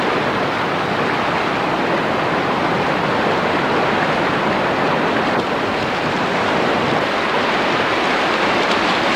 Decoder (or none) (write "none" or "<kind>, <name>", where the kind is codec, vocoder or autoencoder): none